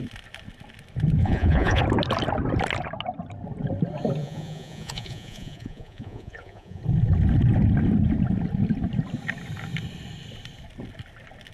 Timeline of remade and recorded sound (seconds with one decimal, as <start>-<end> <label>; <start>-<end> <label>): 0.0-1.2 recorded; 1.2-1.8 remade; 1.8-4.2 recorded; 4.2-6.8 remade; 6.8-11.5 recorded